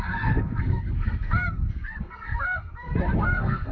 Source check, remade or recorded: remade